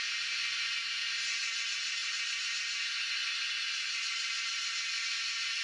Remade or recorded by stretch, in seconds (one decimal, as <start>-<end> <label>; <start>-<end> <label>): 0.0-5.6 recorded